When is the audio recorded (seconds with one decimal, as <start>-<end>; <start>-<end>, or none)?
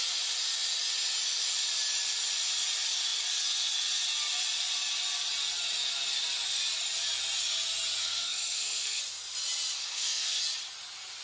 0.0-8.0; 9.0-9.8; 10.4-11.2